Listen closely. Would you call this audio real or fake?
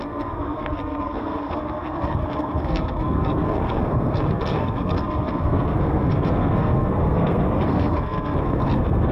fake